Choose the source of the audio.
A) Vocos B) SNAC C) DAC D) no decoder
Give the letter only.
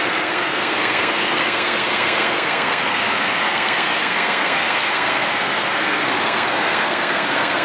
B